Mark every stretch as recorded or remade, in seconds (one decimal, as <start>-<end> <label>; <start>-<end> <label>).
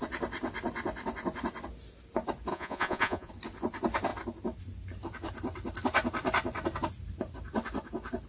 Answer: 0.0-2.5 recorded; 2.5-3.3 remade; 3.3-8.3 recorded